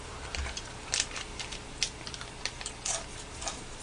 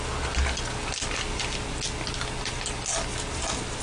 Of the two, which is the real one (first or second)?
second